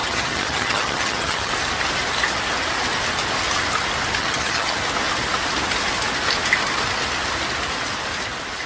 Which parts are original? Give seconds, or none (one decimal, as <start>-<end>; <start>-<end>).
1.5-4.2; 4.8-8.7